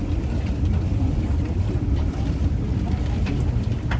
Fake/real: real